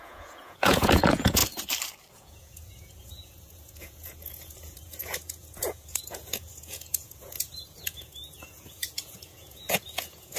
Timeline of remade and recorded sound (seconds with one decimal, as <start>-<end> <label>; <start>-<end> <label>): 0.0-1.4 remade; 1.4-2.1 recorded; 2.1-10.4 remade